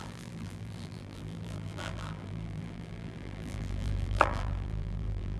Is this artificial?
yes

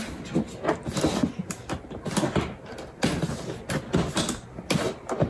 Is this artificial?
no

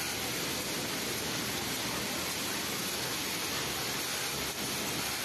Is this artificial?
no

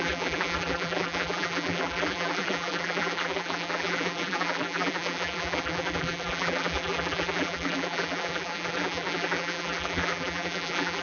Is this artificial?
yes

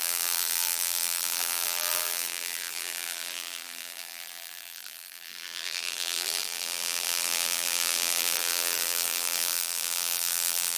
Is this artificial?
yes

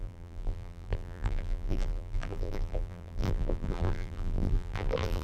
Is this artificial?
yes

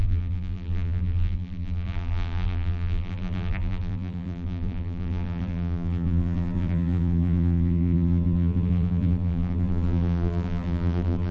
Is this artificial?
yes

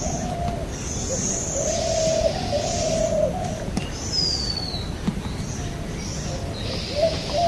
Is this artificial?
no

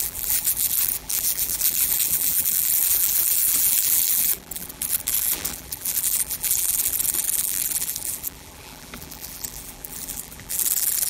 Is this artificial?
yes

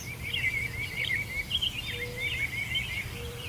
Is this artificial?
yes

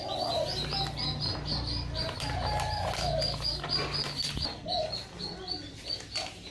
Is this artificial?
no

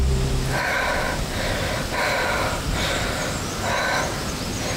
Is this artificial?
no